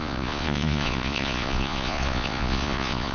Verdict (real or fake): fake